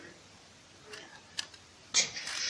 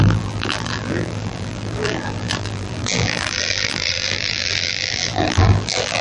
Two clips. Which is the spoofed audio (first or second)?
second